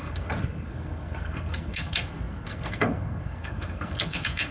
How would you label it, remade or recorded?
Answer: remade